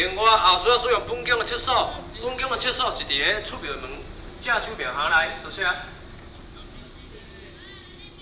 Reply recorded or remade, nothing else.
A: recorded